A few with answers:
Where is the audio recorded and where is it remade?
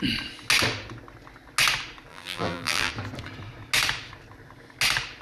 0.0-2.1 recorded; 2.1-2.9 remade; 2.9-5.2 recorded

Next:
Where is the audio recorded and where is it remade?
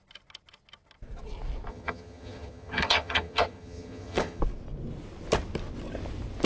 0.0-1.7 recorded; 1.7-4.4 remade; 4.4-6.5 recorded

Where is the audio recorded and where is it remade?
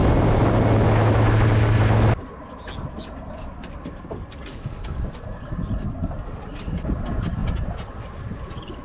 0.0-8.8 recorded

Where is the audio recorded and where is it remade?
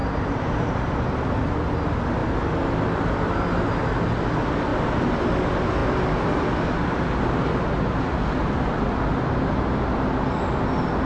0.0-1.5 remade; 1.5-11.1 recorded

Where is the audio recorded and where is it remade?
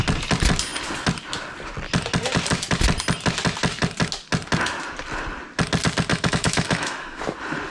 0.0-6.1 recorded; 6.1-7.2 remade; 7.2-7.7 recorded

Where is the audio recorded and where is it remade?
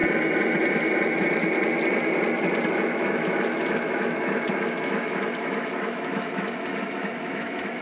0.0-2.7 recorded; 2.7-7.8 remade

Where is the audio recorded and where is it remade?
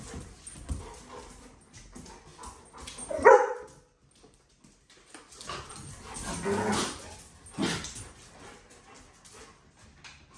0.0-10.4 recorded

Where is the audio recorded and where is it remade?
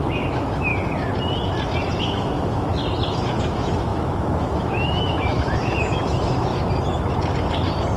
0.0-0.7 remade; 0.7-2.0 recorded; 2.0-2.8 remade; 2.8-3.4 recorded; 3.4-6.5 remade; 6.5-8.0 recorded